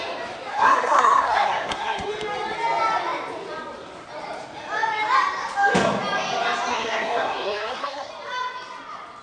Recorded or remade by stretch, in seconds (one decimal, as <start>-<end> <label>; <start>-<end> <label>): 0.0-0.5 recorded; 0.5-2.1 remade; 2.1-6.7 recorded; 6.7-8.1 remade; 8.1-9.2 recorded